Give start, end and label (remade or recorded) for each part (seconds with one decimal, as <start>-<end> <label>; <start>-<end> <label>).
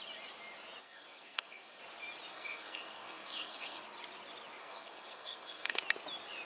0.0-0.8 recorded; 0.8-1.8 remade; 1.8-2.3 recorded; 2.3-3.8 remade; 3.8-4.6 recorded; 4.6-5.8 remade; 5.8-6.4 recorded